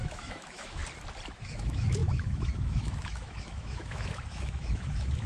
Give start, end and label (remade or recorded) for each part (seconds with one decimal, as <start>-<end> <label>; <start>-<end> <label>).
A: 0.0-0.8 remade; 0.8-1.4 recorded; 1.4-5.3 remade